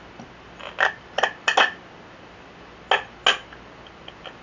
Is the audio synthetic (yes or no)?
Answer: no